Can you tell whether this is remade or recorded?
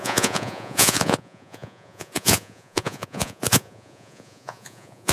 remade